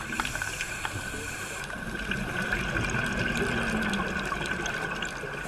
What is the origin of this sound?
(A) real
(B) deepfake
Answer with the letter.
A